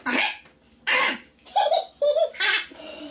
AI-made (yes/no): no